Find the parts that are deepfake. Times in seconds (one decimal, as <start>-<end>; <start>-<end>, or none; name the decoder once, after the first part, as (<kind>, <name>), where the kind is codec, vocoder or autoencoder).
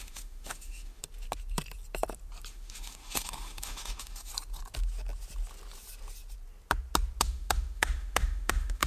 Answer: 0.0-1.0 (autoencoder, DAC-VAE); 2.5-4.3; 7.2-8.9